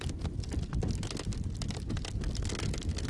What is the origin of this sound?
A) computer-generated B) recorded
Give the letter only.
B